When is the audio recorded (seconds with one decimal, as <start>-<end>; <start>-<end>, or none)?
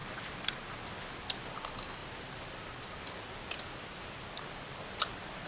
0.0-5.5